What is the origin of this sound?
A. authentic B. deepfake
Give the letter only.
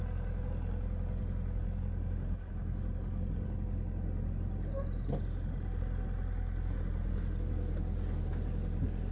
A